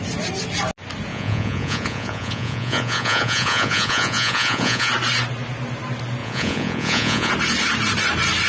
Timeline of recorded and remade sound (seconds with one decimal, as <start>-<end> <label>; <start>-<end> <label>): 0.0-1.1 recorded; 1.1-4.9 remade; 4.9-6.2 recorded; 6.2-7.3 remade; 7.3-8.5 recorded